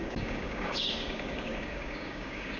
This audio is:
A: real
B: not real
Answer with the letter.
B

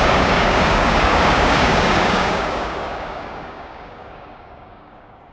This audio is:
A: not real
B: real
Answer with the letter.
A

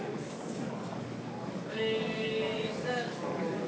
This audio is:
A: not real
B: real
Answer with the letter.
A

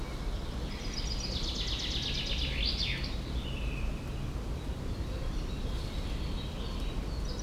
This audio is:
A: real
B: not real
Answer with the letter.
A